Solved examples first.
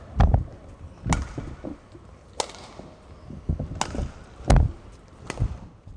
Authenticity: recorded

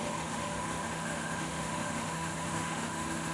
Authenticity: remade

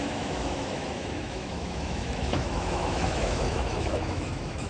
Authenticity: remade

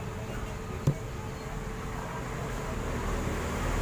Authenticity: recorded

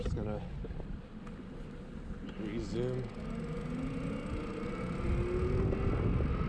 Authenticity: recorded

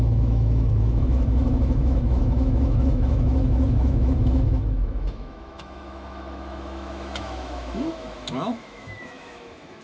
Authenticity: remade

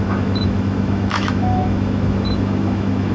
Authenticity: remade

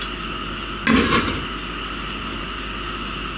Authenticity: recorded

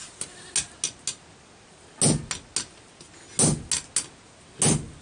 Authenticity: recorded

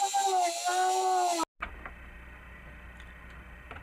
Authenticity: recorded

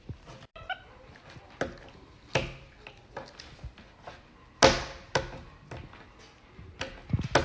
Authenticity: recorded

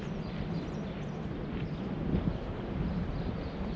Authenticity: recorded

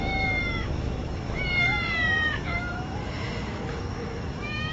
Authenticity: remade